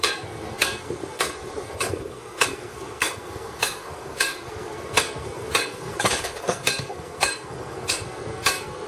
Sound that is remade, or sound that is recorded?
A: remade